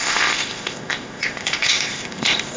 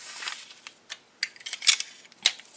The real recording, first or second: second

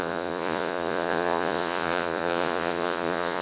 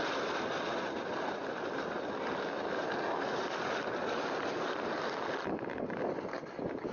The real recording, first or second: second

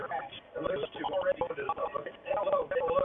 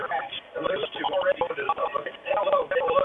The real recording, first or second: first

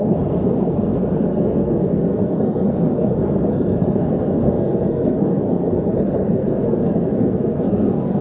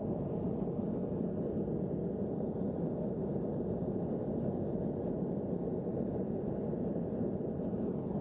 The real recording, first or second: second